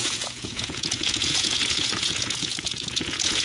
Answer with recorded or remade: remade